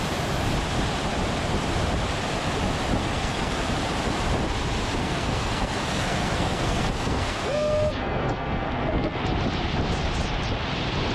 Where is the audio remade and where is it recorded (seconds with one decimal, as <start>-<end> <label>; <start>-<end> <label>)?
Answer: 0.0-3.0 recorded; 3.0-3.7 remade; 3.7-5.0 recorded; 5.0-9.2 remade; 9.2-11.1 recorded